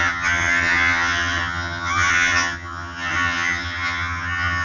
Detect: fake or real fake